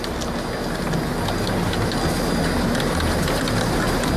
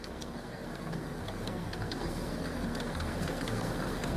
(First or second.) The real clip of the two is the first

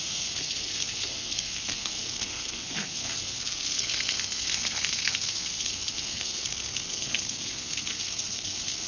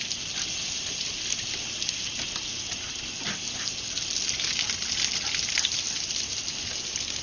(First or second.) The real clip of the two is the second